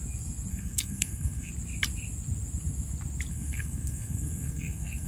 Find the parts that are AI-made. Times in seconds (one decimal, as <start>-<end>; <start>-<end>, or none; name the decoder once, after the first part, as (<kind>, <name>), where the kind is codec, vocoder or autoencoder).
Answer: 0.5-1.5 (codec, SNAC); 3.3-5.1

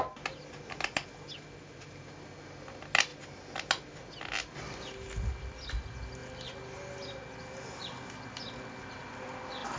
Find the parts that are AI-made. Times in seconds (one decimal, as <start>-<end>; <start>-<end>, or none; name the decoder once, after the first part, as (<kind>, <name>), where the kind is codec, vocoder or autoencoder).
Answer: none

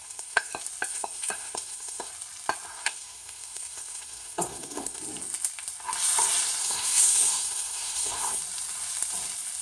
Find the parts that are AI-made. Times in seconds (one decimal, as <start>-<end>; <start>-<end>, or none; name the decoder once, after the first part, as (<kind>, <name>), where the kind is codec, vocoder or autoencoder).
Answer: 0.0-0.5 (codec, SNAC); 0.9-2.1; 2.7-5.0; 6.6-8.4

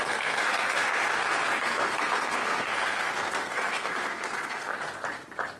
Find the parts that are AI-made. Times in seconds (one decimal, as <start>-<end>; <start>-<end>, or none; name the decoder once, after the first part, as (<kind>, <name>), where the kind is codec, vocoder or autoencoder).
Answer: 0.0-4.8 (codec, SNAC)

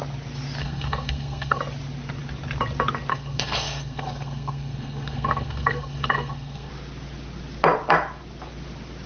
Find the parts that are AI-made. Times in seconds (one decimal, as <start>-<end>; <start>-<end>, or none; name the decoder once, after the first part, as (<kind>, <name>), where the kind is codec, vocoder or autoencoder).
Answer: 0.6-1.6 (codec, SNAC); 3.1-6.7

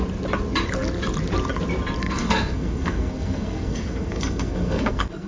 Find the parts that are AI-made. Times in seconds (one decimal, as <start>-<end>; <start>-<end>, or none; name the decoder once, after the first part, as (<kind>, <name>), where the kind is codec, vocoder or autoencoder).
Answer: 2.0-5.3 (codec, SNAC)

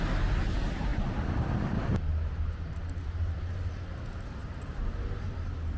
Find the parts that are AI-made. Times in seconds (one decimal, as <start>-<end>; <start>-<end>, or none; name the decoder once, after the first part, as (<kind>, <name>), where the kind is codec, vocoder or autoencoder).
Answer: none